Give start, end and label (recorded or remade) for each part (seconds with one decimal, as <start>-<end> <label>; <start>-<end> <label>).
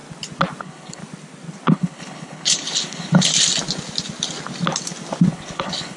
0.0-0.6 recorded; 0.6-1.0 remade; 1.0-1.7 recorded; 1.7-3.3 remade; 3.3-5.3 recorded; 5.3-6.0 remade